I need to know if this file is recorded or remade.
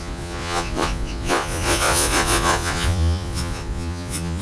remade